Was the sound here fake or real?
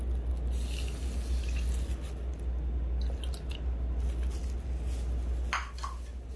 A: real